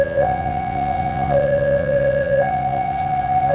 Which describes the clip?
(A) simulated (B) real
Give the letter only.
A